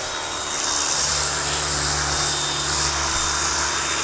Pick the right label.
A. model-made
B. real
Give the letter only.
B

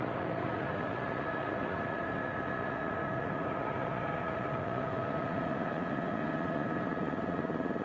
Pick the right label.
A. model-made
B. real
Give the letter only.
A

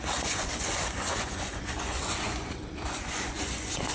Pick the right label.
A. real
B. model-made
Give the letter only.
B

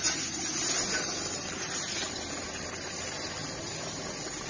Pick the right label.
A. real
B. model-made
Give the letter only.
A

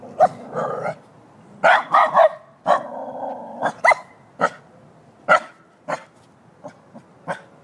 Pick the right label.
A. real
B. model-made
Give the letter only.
A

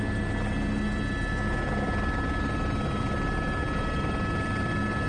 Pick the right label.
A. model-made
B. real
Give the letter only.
B